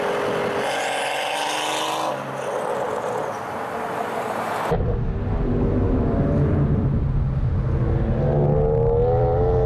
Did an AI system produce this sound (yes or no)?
no